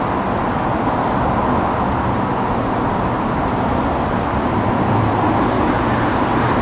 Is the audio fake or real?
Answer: real